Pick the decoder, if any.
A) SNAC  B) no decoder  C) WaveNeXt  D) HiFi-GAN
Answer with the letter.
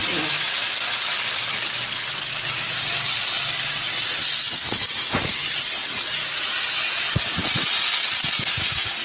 B